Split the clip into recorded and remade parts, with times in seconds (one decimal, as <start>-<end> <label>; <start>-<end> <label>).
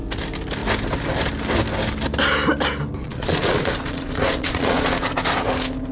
0.0-3.0 recorded; 3.0-5.1 remade; 5.1-5.9 recorded